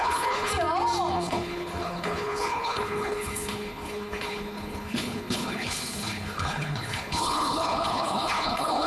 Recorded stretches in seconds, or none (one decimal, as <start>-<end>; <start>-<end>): 0.5-1.1